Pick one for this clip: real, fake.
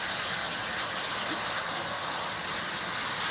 real